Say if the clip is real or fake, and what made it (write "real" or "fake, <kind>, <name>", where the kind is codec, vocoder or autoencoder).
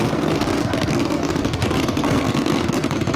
fake, codec, SNAC